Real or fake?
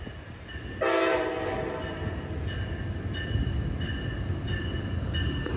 real